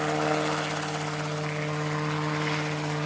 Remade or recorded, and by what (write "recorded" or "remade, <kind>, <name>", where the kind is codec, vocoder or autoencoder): recorded